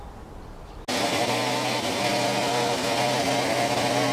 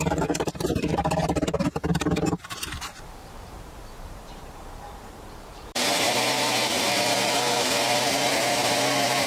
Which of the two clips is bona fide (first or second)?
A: first